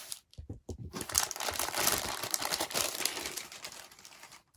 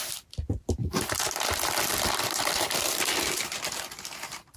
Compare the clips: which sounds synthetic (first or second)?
first